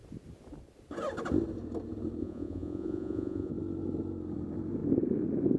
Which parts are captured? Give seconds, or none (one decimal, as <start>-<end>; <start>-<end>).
0.0-2.2; 3.5-5.6